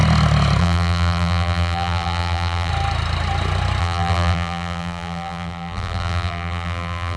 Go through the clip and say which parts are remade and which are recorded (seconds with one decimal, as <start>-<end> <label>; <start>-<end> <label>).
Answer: 0.0-0.6 recorded; 0.6-2.7 remade; 2.7-3.8 recorded; 3.8-7.2 remade

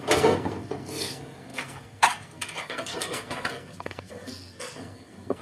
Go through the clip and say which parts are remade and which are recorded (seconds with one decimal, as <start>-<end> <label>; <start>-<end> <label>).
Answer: 0.0-5.4 remade